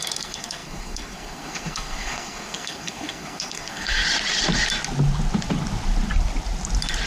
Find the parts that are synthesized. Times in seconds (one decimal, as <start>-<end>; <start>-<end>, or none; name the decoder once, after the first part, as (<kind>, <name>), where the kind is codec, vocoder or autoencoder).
0.0-4.0 (codec, SNAC)